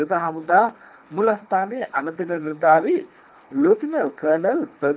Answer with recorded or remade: remade